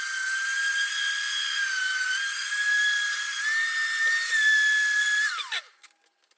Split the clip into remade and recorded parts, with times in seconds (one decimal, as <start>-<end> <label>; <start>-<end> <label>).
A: 0.0-6.4 recorded